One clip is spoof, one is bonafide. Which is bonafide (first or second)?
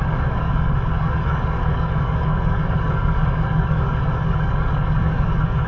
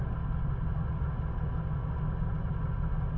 second